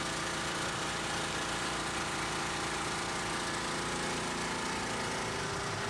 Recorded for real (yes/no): yes